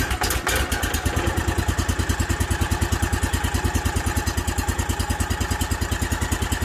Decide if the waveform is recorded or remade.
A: recorded